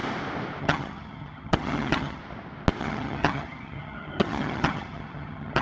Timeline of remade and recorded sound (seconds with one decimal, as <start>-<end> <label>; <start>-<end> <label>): 0.0-0.6 recorded; 0.6-2.2 remade; 2.2-2.8 recorded; 2.8-5.6 remade